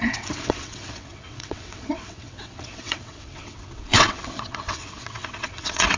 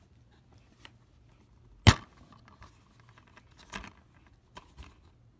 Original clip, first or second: second